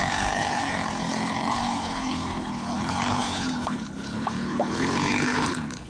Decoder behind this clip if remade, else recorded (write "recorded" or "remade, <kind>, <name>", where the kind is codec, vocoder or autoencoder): remade, codec, HILCodec